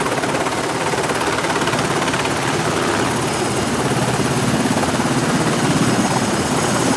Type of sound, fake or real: real